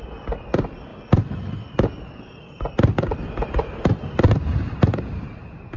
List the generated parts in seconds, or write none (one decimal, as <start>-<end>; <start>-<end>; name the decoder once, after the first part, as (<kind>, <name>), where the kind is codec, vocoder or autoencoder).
0.0-5.8 (vocoder, BigVGAN v2)